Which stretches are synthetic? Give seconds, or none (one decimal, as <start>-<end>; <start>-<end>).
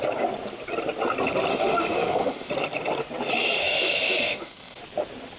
1.5-2.5; 3.6-4.8